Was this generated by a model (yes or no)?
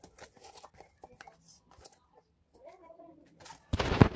no